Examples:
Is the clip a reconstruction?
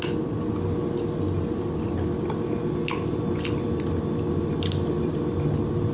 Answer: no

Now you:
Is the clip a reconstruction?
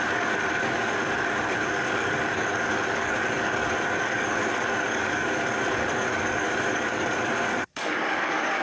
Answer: yes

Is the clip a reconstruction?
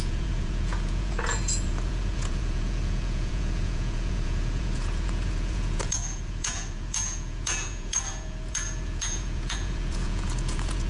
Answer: yes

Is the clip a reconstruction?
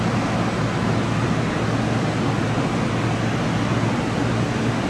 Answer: no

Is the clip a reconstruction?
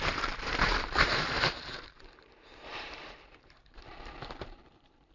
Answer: yes